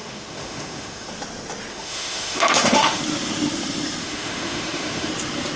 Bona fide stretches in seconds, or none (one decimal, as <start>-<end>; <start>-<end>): 1.1-1.7; 3.0-4.0; 5.1-5.6